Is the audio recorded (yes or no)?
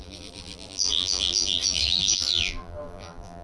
no